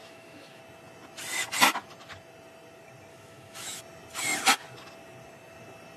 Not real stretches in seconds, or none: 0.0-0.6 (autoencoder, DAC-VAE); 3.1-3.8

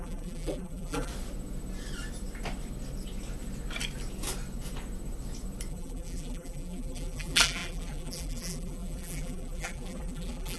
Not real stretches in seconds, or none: 0.0-1.1 (vocoder, BigVGAN v2); 5.7-10.6

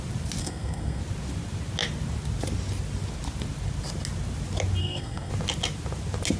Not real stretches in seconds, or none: 0.4-1.0 (codec, SNAC); 4.8-5.3

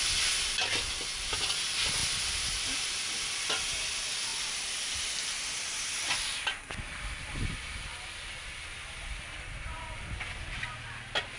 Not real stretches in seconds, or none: none

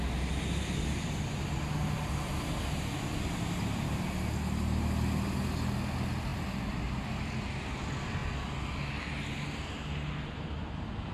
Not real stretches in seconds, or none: none

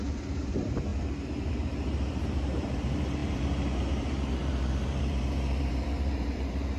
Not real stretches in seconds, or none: 0.0-6.8 (vocoder, BigVGAN v2)

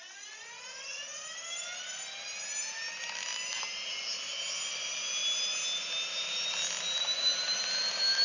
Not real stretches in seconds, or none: none